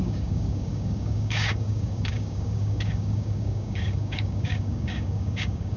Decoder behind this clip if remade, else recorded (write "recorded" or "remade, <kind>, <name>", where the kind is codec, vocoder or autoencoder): remade, codec, DAC